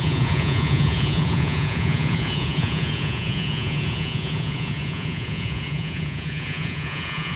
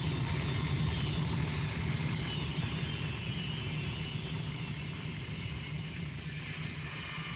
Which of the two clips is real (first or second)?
second